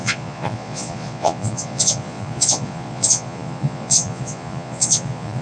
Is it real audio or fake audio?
fake